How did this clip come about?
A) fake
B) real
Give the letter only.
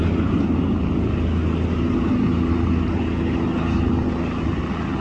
B